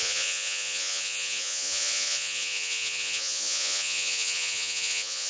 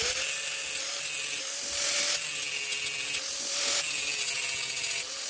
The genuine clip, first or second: second